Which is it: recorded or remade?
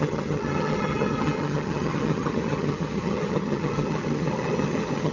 remade